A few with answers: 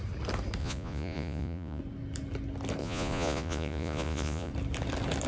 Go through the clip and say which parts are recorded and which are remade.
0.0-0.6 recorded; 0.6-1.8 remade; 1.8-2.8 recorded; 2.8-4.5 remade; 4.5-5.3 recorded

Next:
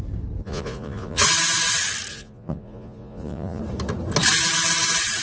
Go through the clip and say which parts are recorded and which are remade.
0.0-0.4 recorded; 0.4-1.2 remade; 1.2-2.1 recorded; 2.1-3.6 remade; 3.6-5.2 recorded

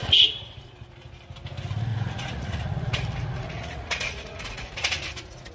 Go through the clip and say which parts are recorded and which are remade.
0.0-0.7 remade; 0.7-1.9 recorded; 1.9-5.5 remade